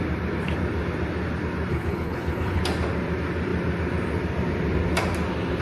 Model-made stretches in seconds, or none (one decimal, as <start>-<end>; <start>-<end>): 1.7-2.6